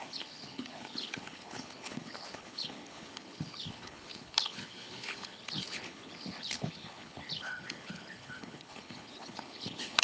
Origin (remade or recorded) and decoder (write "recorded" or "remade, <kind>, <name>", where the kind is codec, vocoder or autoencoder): remade, codec, HILCodec